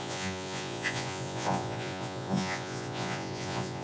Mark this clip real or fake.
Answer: fake